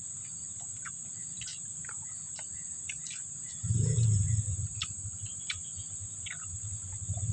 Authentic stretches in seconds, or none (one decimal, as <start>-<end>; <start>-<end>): 0.0-7.3